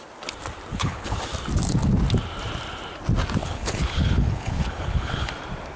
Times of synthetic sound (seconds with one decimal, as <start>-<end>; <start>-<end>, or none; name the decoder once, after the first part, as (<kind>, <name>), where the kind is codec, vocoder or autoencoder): 0.7-1.2 (codec, HILCodec); 3.4-5.3

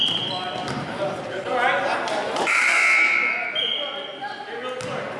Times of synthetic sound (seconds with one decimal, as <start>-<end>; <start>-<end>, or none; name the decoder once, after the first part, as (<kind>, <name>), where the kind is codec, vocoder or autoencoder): none

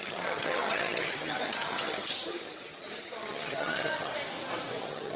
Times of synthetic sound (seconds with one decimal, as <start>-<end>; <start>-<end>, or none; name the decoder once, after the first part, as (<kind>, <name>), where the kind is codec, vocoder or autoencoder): 0.0-4.1 (vocoder, HiFi-GAN); 4.8-5.2

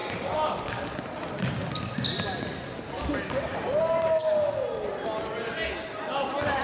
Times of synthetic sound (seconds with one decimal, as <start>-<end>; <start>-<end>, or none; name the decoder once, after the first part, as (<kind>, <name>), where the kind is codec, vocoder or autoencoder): none

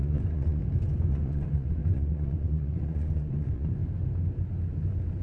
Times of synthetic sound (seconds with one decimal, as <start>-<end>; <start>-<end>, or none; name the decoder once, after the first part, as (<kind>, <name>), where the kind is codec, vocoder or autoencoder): 0.0-0.6 (vocoder, Vocos); 1.1-3.8